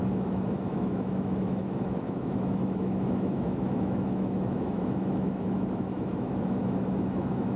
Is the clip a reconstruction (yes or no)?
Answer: yes